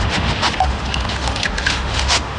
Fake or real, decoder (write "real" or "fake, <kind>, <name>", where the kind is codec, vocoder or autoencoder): fake, autoencoder, DAC-VAE